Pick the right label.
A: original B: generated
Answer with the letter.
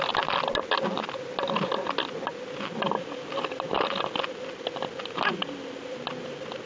A